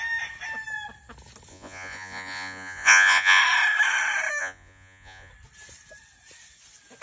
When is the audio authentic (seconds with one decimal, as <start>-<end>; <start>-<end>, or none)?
0.0-1.5; 3.4-4.4; 5.3-7.0